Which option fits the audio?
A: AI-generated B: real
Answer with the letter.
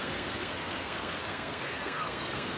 A